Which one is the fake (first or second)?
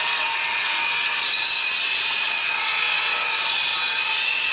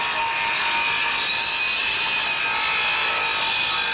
first